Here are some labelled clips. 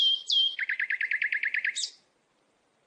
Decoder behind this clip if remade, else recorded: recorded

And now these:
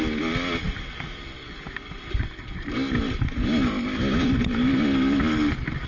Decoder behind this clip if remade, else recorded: recorded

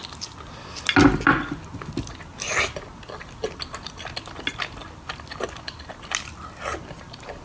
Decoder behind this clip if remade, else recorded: recorded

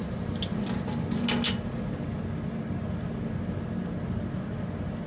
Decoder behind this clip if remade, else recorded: recorded